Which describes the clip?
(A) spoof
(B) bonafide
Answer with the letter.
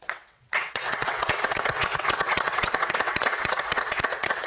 A